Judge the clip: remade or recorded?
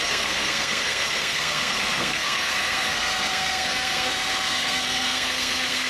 remade